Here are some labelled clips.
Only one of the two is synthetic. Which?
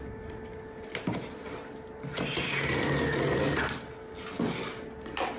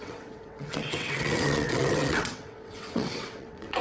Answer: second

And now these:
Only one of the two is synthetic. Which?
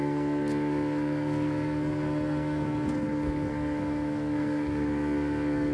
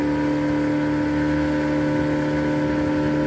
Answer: first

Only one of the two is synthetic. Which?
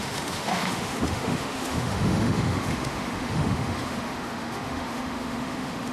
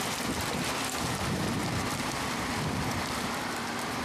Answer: first